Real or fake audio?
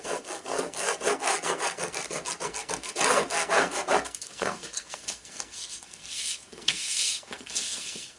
fake